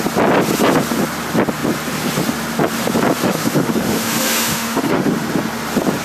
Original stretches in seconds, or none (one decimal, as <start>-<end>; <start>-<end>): 0.0-3.2; 5.1-6.0